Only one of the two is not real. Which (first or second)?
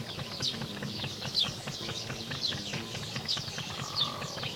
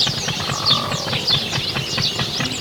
first